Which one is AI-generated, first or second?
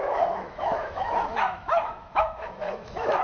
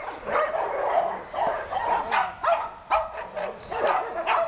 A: first